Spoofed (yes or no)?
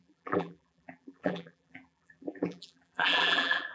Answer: yes